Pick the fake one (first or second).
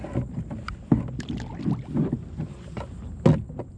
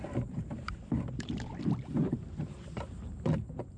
second